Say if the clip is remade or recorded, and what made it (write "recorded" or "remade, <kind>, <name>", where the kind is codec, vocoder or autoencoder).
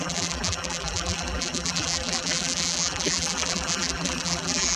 remade, vocoder, BigVGAN v2